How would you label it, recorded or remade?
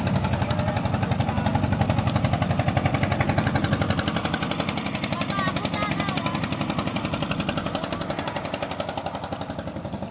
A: recorded